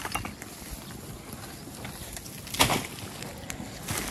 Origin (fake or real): real